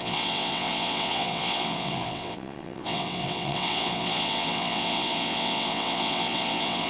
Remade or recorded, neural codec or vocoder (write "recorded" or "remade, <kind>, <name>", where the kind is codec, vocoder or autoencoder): remade, vocoder, WaveNeXt